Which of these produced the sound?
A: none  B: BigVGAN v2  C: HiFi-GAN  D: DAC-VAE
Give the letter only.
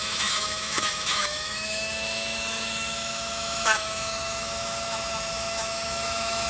D